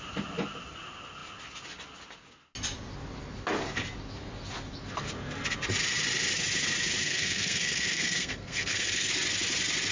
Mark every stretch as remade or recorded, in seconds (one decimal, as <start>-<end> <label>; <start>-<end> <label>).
0.0-7.0 recorded; 7.0-9.1 remade; 9.1-9.9 recorded